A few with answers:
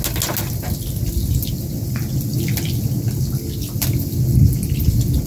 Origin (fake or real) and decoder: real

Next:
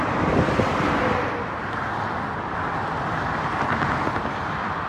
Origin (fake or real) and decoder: real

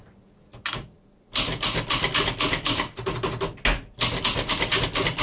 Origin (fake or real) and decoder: real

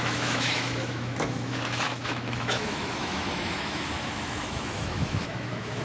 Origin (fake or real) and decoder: fake, autoencoder, DAC-VAE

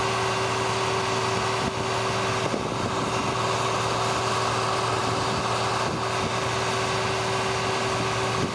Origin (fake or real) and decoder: real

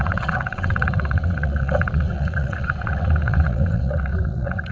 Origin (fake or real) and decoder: fake, vocoder, WaveNeXt